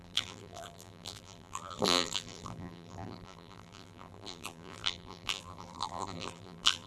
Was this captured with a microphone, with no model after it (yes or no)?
no